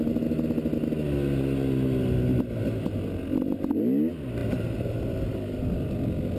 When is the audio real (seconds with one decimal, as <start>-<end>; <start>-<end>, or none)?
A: 0.0-4.4; 5.0-6.4